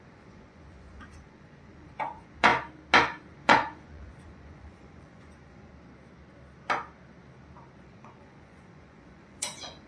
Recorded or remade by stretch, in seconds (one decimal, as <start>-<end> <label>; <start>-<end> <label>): 0.0-2.5 remade; 2.5-3.3 recorded; 3.3-5.7 remade; 5.7-7.8 recorded; 7.8-9.9 remade